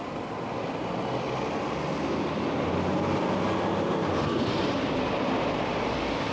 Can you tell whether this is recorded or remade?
recorded